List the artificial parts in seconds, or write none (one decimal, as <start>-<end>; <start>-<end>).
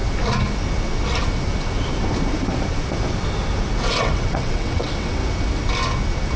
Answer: 3.8-5.2